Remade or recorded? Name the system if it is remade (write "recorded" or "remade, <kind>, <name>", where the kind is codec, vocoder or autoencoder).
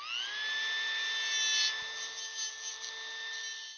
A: recorded